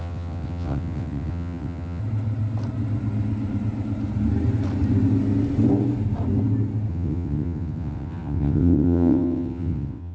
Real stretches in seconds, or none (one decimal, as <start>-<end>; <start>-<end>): 2.0-6.9